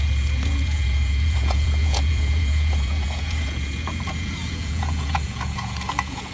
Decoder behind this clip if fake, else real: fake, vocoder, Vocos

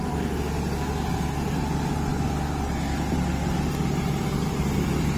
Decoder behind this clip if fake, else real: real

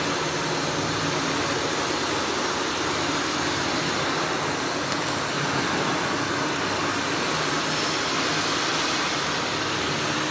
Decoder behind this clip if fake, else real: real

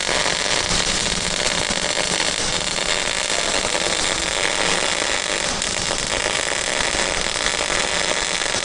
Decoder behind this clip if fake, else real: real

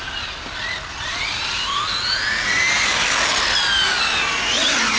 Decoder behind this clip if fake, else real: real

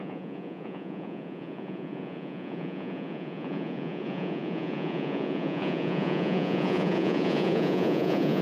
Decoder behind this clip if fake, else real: fake, vocoder, Vocos